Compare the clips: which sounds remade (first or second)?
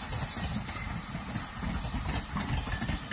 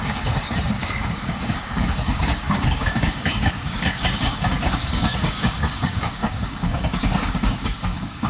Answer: second